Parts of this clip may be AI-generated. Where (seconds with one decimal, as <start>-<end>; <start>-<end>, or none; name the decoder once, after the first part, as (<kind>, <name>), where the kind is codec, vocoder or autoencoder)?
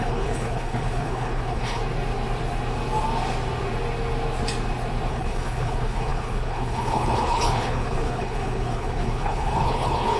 0.0-1.8 (codec, HILCodec); 5.1-10.2